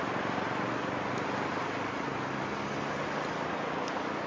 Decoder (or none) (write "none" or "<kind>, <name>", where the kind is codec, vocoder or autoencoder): none